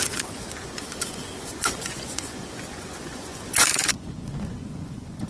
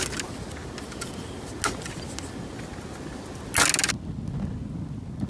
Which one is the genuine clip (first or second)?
second